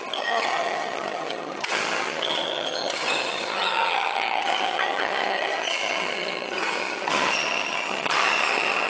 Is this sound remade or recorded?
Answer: remade